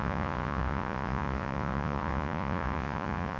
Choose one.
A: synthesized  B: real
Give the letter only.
A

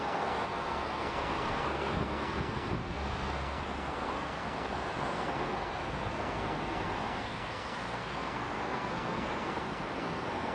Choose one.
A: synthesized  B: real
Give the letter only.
A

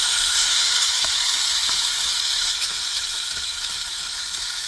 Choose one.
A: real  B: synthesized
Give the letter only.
B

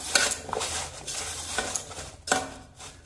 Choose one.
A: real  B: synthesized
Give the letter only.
A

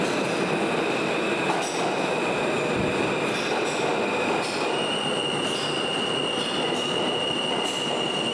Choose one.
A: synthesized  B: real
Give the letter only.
B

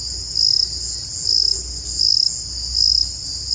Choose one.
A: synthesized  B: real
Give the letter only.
B